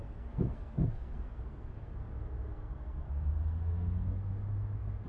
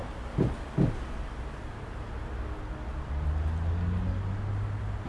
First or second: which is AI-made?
first